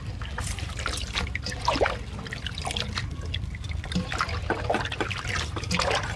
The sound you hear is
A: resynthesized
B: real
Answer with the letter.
B